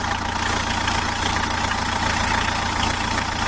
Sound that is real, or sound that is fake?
real